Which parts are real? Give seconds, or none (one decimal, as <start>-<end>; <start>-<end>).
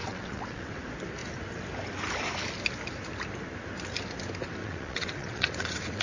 0.7-4.6